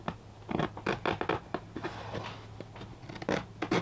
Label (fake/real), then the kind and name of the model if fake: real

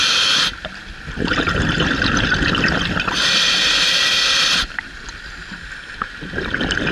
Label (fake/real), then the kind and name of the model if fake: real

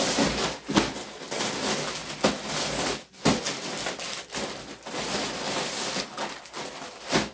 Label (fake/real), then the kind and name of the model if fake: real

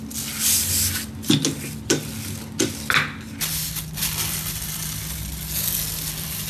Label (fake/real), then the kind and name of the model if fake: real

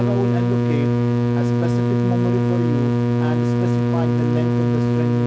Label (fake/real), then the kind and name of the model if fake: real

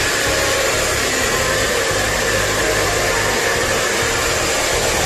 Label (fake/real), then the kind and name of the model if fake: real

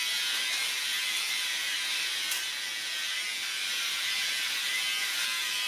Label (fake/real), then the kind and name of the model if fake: fake, vocoder, BigVGAN v2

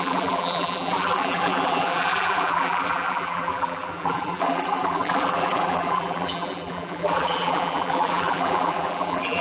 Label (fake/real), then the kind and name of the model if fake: fake, vocoder, BigVGAN v2